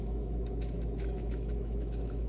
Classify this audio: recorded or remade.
remade